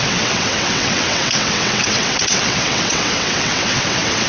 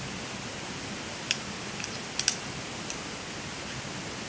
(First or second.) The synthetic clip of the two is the first